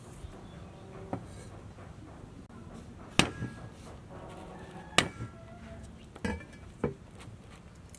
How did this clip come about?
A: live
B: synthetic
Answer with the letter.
A